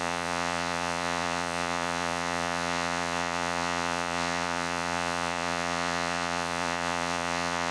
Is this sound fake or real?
fake